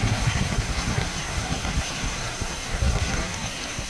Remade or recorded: remade